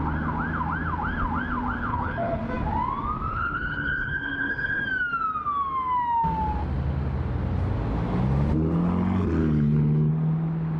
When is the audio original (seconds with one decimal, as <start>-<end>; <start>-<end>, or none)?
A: 0.0-1.9; 2.4-3.3; 4.8-9.4; 10.1-10.8